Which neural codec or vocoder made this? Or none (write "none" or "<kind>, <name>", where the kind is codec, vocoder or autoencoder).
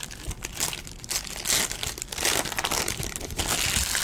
none